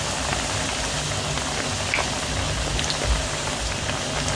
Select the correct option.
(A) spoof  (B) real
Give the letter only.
B